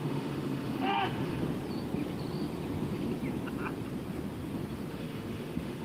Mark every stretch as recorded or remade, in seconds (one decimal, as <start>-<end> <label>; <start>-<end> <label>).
0.0-1.4 remade; 1.4-4.9 recorded; 4.9-5.8 remade